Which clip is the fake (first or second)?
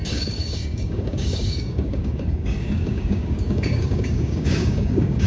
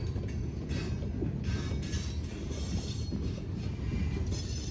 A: first